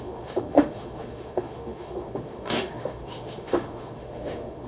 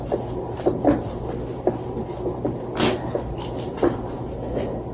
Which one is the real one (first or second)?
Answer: second